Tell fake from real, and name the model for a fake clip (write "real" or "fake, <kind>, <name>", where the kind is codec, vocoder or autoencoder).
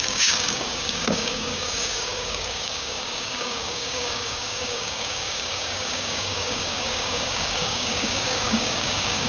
fake, codec, DAC